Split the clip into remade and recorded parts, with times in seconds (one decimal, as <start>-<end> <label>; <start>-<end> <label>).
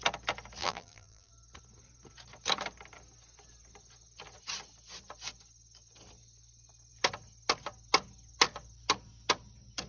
0.0-0.6 recorded; 0.6-1.3 remade; 1.3-9.9 recorded